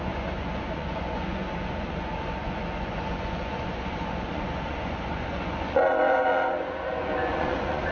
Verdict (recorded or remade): remade